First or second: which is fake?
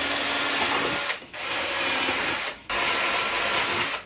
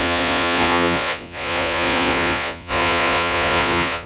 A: second